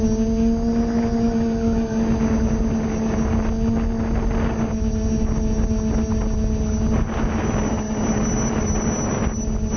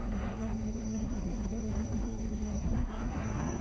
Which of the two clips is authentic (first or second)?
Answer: first